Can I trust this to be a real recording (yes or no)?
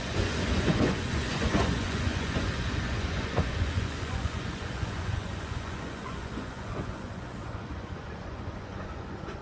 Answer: no